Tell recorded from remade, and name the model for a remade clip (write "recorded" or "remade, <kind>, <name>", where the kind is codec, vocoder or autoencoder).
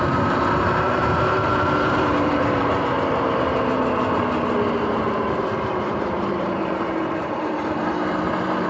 remade, vocoder, BigVGAN v2